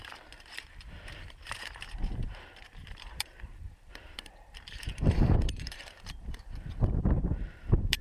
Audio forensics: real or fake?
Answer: fake